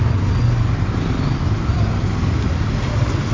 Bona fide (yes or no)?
yes